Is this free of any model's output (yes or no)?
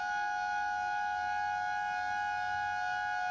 yes